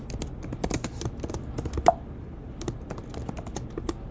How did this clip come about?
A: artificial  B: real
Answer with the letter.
B